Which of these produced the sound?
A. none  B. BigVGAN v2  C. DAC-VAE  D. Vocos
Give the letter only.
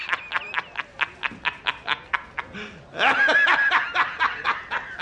A